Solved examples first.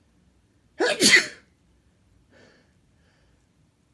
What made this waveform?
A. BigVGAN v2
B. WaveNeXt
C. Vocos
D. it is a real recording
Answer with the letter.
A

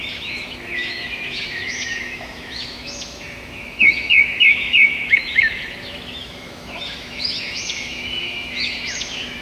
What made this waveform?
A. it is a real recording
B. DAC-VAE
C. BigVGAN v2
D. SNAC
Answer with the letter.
B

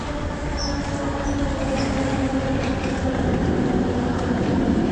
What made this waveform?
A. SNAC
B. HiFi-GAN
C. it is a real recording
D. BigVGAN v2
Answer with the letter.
C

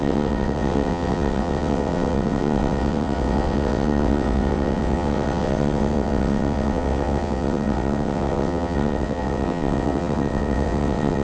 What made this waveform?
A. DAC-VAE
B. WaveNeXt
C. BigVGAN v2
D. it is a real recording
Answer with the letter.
B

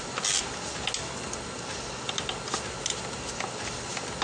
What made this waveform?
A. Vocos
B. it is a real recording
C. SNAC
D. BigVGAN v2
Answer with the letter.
B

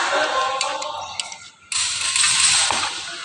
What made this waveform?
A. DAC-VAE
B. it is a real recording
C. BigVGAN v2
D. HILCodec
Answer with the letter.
B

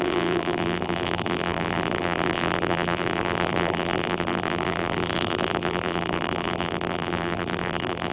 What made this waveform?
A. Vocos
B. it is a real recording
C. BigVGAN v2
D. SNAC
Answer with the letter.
C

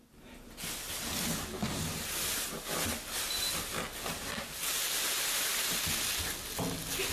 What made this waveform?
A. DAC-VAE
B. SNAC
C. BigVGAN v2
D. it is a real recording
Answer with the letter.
D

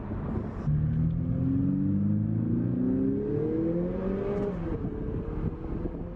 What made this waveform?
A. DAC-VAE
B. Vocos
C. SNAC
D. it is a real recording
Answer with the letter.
D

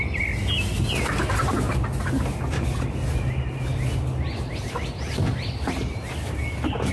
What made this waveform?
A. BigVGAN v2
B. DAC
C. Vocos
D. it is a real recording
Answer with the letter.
D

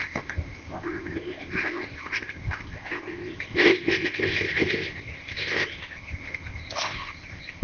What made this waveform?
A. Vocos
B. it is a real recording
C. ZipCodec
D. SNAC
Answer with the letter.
C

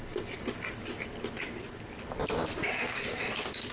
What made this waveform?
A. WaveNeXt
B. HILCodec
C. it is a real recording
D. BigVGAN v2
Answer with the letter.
C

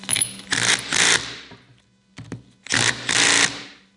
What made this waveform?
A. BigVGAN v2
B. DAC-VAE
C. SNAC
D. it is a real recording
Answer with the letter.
D